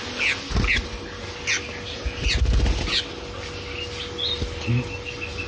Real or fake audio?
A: real